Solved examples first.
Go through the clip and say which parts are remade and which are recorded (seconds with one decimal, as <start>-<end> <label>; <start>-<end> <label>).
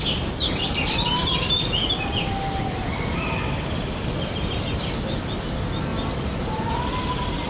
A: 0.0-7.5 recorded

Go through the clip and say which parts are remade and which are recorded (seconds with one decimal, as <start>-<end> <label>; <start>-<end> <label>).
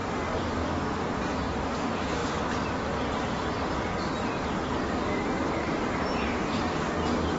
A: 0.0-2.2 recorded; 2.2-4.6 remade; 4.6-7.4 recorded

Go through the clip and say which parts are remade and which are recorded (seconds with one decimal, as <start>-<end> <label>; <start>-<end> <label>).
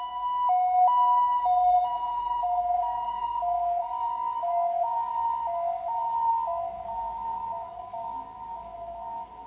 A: 0.0-5.1 remade; 5.1-6.3 recorded; 6.3-9.5 remade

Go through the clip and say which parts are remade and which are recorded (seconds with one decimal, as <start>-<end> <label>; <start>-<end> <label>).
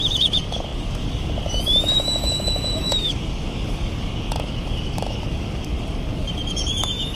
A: 0.0-7.1 remade